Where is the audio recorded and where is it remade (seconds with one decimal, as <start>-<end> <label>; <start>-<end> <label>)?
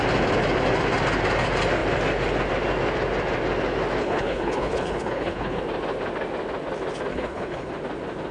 0.0-4.0 recorded; 4.0-5.6 remade; 5.6-7.1 recorded; 7.1-7.7 remade; 7.7-8.3 recorded